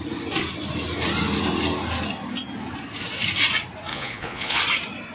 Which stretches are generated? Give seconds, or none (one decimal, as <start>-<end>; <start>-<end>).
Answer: 3.9-4.6